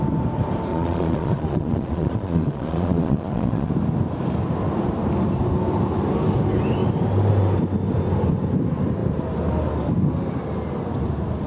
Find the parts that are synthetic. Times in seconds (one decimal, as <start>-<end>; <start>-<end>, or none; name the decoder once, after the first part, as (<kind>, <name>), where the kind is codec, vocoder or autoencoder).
0.7-3.7 (vocoder, Vocos)